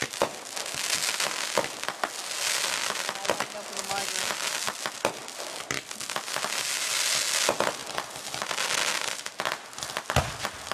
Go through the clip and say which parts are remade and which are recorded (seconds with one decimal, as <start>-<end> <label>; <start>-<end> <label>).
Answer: 0.0-10.7 recorded